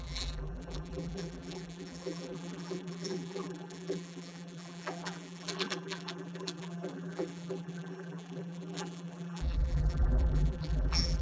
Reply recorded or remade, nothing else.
remade